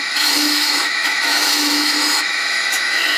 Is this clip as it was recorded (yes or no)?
no